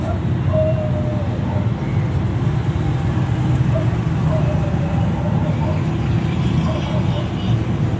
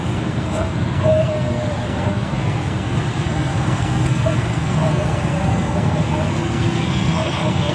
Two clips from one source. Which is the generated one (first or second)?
second